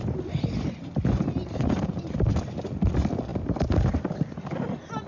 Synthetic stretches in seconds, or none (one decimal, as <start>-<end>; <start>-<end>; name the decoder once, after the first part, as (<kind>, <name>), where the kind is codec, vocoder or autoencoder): none